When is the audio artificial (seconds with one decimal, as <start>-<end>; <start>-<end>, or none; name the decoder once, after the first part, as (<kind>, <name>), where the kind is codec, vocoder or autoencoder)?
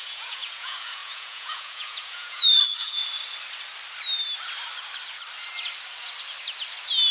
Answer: 0.0-3.0 (vocoder, Vocos)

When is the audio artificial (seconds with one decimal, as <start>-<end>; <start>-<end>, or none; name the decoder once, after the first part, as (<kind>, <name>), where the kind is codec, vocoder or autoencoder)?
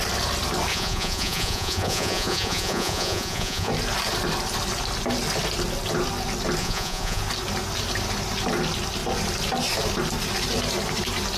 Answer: 0.7-3.7 (vocoder, Vocos); 6.6-7.2